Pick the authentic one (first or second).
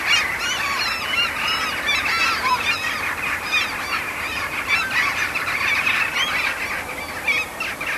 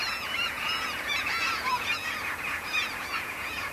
first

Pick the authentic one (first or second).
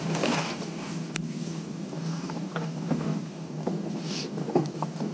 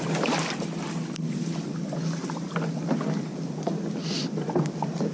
second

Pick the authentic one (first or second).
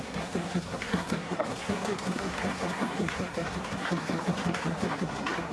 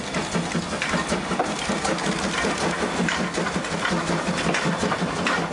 second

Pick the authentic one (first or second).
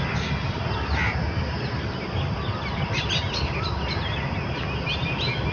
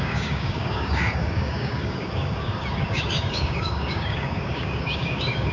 first